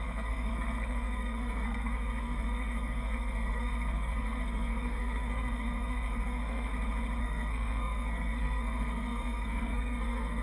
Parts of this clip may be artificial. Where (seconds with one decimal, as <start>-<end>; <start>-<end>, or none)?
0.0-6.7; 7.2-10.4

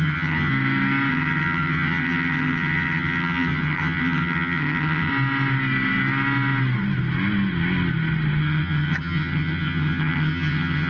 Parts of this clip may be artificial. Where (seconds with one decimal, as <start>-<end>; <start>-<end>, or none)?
0.0-0.5; 1.1-5.1; 8.4-10.9

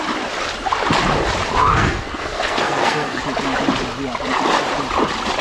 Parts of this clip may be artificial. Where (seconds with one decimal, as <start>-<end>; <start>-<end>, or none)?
1.6-3.2